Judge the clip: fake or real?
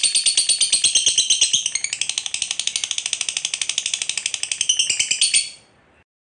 real